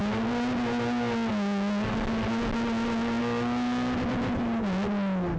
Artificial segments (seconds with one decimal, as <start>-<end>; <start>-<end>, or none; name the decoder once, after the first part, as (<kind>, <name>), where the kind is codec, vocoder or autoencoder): none